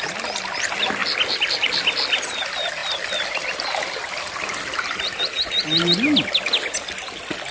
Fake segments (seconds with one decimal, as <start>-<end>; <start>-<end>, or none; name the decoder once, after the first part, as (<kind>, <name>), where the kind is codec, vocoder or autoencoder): 1.0-1.5 (vocoder, BigVGAN v2); 2.8-5.0